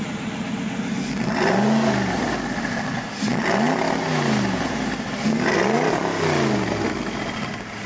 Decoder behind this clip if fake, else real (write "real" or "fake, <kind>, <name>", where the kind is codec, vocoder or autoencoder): real